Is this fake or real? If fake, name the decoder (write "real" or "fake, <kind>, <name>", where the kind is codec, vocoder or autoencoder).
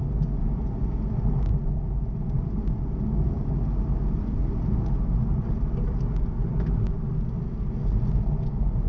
real